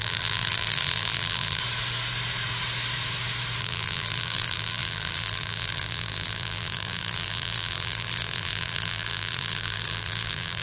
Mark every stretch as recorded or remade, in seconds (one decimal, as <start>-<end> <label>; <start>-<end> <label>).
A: 0.0-1.6 remade; 1.6-3.6 recorded; 3.6-10.6 remade